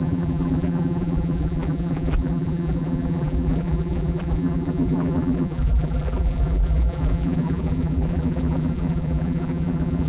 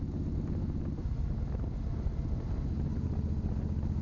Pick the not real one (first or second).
first